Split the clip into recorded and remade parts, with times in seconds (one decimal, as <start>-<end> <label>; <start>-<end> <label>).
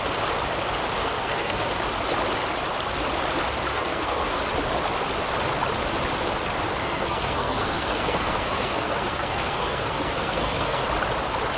0.0-1.0 recorded; 1.0-1.7 remade; 1.7-3.7 recorded; 3.7-4.4 remade; 4.4-6.8 recorded; 6.8-10.8 remade; 10.8-11.6 recorded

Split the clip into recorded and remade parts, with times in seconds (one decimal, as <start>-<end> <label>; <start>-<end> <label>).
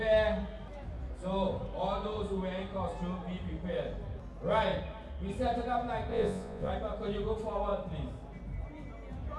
0.0-6.1 recorded; 6.1-6.7 remade; 6.7-9.4 recorded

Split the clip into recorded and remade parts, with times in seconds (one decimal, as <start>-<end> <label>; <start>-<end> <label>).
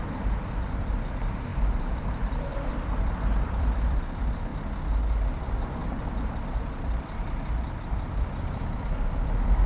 0.0-4.5 remade; 4.5-5.3 recorded; 5.3-9.7 remade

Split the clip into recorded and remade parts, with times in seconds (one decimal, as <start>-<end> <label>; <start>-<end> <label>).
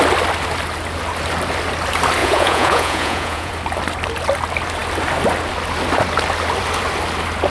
0.0-2.2 recorded; 2.2-3.5 remade; 3.5-7.5 recorded